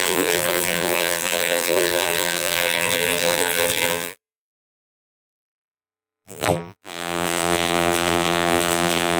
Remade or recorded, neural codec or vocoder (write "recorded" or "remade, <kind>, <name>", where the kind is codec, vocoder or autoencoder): remade, vocoder, BigVGAN v2